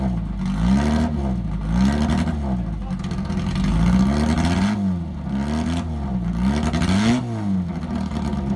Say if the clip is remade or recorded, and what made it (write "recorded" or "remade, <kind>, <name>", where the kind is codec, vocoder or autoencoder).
recorded